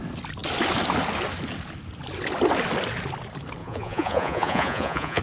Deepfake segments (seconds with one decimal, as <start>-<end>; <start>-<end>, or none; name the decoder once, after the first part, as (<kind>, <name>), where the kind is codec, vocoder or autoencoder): 3.6-5.2 (vocoder, Vocos)